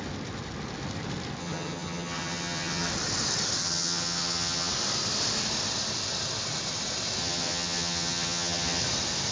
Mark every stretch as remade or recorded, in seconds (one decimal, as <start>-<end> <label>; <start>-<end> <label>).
0.0-1.4 recorded; 1.4-2.9 remade; 2.9-3.6 recorded; 3.6-4.7 remade; 4.7-7.2 recorded; 7.2-8.8 remade; 8.8-9.3 recorded